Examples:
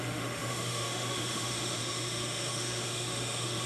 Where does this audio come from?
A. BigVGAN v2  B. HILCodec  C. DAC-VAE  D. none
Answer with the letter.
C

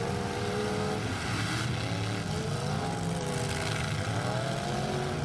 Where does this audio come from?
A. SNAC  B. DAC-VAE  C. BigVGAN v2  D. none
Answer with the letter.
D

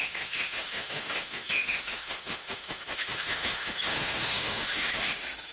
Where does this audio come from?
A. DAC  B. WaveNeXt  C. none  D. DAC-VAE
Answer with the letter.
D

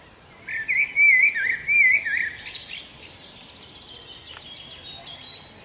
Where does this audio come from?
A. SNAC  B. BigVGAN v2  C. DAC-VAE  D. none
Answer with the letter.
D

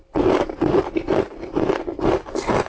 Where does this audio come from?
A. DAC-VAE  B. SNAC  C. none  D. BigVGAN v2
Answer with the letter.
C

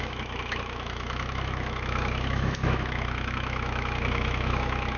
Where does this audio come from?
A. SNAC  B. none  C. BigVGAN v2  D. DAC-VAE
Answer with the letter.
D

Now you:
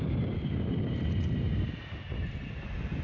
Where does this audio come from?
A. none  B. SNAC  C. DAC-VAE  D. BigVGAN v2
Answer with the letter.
A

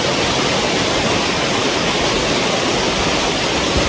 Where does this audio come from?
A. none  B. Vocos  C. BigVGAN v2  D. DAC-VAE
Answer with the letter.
A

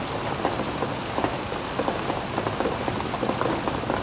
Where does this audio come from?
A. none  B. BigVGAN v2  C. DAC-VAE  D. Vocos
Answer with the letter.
A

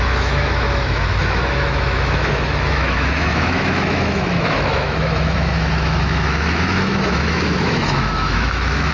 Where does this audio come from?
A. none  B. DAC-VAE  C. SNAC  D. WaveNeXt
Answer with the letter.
B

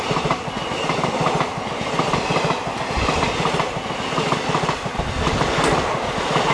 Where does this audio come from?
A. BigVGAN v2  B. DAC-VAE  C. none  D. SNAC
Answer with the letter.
C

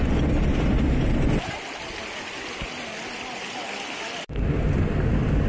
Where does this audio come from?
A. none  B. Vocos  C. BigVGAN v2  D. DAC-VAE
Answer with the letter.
A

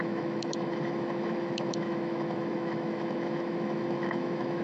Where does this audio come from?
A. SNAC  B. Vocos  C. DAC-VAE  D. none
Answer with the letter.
C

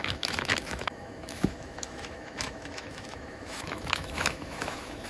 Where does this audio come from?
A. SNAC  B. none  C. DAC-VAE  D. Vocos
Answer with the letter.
C